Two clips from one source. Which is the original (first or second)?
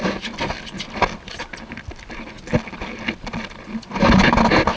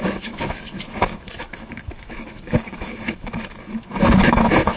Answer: first